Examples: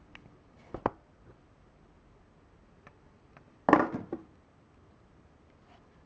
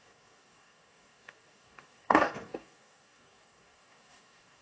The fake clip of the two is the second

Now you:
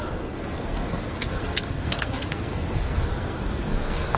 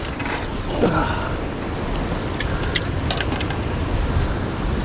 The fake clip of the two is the first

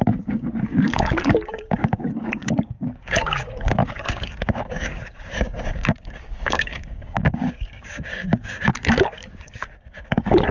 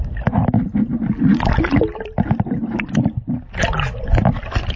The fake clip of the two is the first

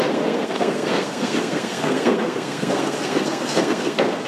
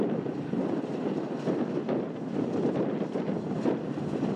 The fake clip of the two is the first